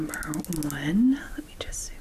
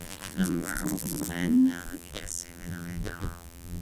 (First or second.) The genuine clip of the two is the first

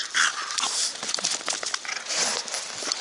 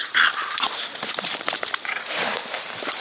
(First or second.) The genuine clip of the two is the first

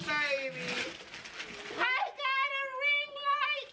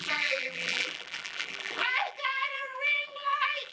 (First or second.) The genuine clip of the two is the first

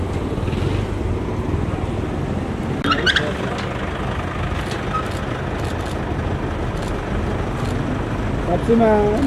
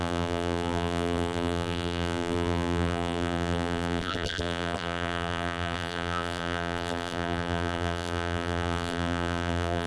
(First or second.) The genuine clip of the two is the first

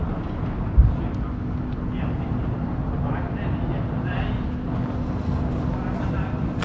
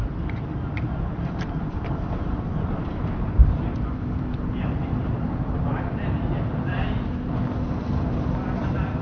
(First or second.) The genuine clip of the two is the first